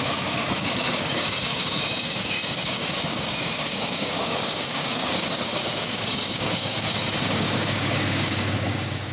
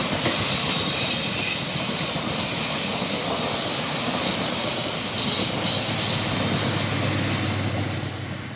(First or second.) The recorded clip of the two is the second